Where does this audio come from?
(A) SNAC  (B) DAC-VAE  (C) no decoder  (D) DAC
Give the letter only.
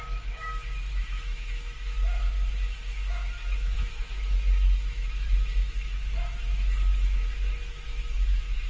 B